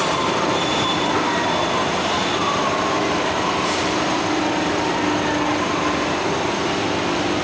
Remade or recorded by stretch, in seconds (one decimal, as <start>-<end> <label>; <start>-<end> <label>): 0.0-4.4 remade; 4.4-7.4 recorded